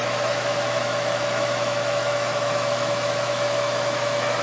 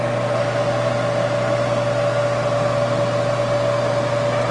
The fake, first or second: first